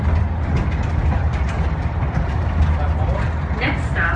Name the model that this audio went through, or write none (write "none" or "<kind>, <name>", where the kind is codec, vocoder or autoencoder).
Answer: none